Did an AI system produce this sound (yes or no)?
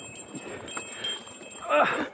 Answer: no